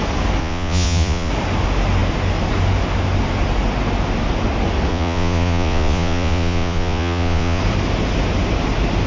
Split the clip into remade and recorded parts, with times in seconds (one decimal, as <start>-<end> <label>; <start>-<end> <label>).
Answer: 0.0-0.4 recorded; 0.4-1.3 remade; 1.3-4.9 recorded; 4.9-7.6 remade; 7.6-9.1 recorded